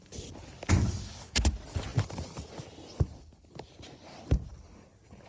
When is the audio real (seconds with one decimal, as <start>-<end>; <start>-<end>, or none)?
0.0-5.3